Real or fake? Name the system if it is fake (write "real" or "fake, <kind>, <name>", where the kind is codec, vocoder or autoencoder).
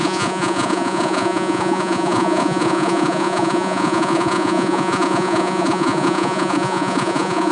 fake, vocoder, Vocos